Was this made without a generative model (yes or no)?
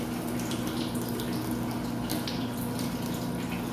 yes